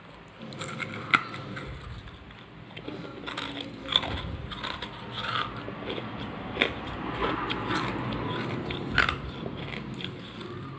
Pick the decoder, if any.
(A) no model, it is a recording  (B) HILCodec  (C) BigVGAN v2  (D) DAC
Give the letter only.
A